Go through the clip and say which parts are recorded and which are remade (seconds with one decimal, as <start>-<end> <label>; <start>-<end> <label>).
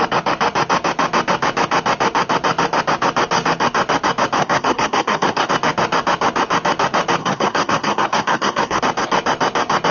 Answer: 0.0-4.4 recorded; 4.4-5.5 remade; 5.5-7.2 recorded; 7.2-8.8 remade; 8.8-9.9 recorded